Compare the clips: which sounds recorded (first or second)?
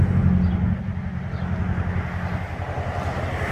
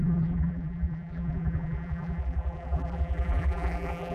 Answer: first